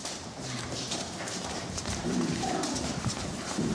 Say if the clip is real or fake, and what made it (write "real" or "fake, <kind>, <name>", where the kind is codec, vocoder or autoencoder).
fake, vocoder, BigVGAN v2